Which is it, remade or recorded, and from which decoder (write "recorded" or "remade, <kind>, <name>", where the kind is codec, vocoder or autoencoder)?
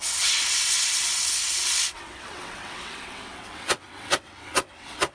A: remade, vocoder, WaveNeXt